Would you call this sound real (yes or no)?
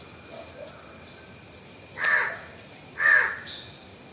yes